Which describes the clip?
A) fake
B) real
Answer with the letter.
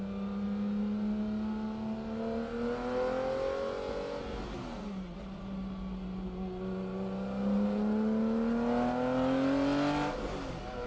B